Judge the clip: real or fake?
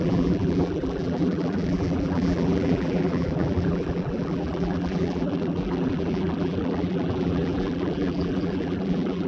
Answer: fake